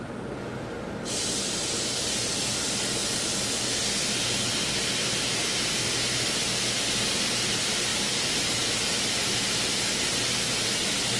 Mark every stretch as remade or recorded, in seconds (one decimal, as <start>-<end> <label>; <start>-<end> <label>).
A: 0.0-7.9 recorded; 7.9-8.6 remade; 8.6-11.2 recorded